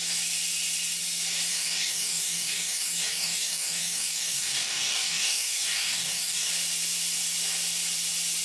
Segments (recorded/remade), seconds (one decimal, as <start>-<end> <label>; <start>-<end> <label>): 0.0-1.5 recorded; 1.5-6.5 remade; 6.5-8.4 recorded

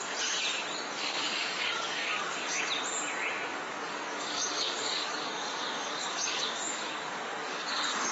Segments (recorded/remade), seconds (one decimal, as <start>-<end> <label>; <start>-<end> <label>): 0.0-1.1 recorded; 1.1-2.6 remade; 2.6-3.5 recorded; 3.5-8.1 remade

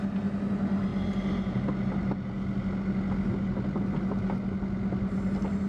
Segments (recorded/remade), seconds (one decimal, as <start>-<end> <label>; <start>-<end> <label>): 0.0-5.7 recorded

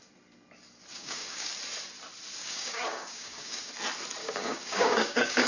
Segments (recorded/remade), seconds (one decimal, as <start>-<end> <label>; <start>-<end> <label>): 0.0-0.9 recorded; 0.9-1.5 remade; 1.5-2.4 recorded; 2.4-3.7 remade; 3.7-4.2 recorded; 4.2-5.5 remade